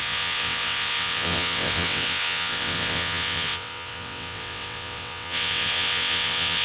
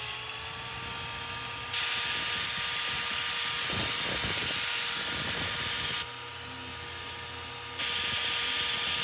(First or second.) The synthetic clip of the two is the first